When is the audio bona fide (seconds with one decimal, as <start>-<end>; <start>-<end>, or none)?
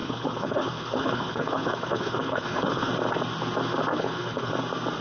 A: 2.9-3.9; 4.5-5.0